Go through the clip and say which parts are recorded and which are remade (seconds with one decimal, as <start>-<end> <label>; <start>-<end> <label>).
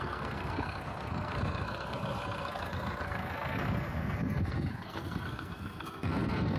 0.0-6.6 remade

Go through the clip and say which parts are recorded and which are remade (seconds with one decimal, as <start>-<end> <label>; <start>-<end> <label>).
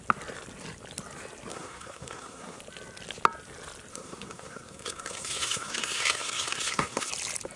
0.0-1.5 recorded; 1.5-2.6 remade; 2.6-3.9 recorded; 3.9-7.1 remade; 7.1-7.6 recorded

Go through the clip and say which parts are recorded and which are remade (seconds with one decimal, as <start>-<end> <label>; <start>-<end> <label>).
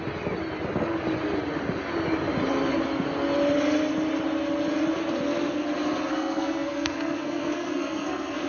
0.0-6.1 recorded; 6.1-8.5 remade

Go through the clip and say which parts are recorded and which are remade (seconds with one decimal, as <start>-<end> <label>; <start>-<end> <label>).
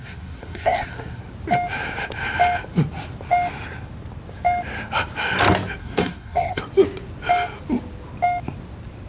0.0-1.2 remade; 1.2-5.8 recorded; 5.8-6.6 remade; 6.6-9.1 recorded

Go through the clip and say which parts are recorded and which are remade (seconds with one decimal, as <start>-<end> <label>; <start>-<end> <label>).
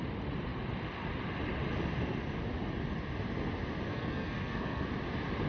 0.0-3.9 recorded; 3.9-4.9 remade; 4.9-5.5 recorded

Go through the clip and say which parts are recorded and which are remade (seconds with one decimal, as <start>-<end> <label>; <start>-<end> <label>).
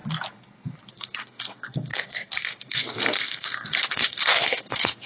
0.0-0.9 recorded; 0.9-5.1 remade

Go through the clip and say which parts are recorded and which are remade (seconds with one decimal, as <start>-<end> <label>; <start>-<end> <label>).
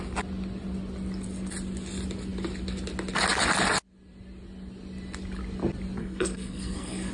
0.0-6.0 recorded; 6.0-7.1 remade